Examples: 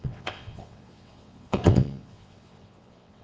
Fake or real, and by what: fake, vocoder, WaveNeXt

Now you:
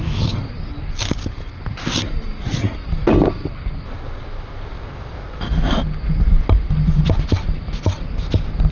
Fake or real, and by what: real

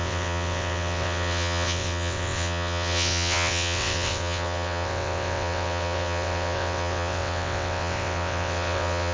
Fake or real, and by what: fake, vocoder, WaveNeXt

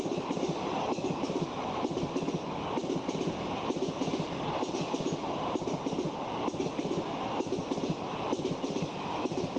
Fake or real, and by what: real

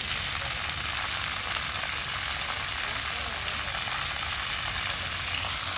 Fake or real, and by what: real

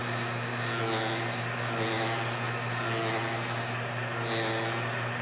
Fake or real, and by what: real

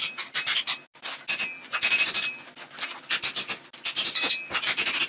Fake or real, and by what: real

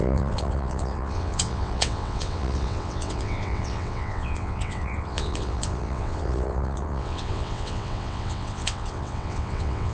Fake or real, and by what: fake, vocoder, WaveNeXt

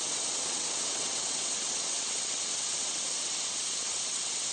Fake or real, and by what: fake, vocoder, WaveNeXt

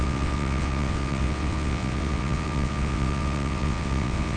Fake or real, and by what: fake, vocoder, WaveNeXt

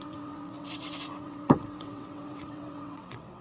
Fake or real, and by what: fake, vocoder, WaveNeXt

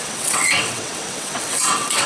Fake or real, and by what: fake, vocoder, WaveNeXt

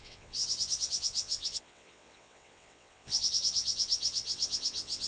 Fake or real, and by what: fake, vocoder, WaveNeXt